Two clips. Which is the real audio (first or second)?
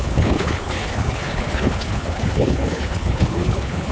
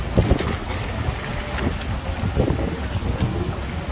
second